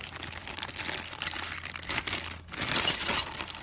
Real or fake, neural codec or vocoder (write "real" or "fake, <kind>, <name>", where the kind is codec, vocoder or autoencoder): real